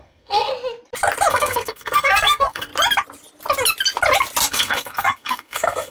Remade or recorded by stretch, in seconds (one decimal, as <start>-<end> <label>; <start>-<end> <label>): 0.0-0.5 remade; 0.5-1.3 recorded; 1.3-2.7 remade; 2.7-4.5 recorded; 4.5-5.9 remade